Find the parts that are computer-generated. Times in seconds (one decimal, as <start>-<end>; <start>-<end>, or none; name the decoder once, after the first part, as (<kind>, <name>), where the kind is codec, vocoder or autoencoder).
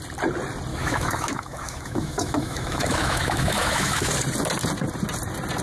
0.7-4.1 (autoencoder, DAC-VAE)